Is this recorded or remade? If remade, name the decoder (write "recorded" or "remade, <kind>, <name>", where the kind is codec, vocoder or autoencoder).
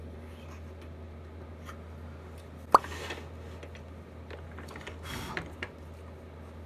recorded